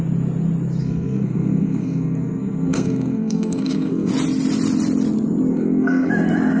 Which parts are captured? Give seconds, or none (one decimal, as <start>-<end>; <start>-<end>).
0.0-0.8; 4.1-5.5; 6.1-6.6